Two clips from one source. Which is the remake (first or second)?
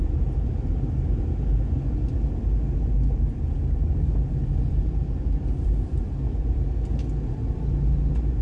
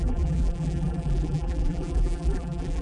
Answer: second